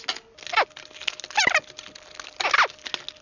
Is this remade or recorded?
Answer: recorded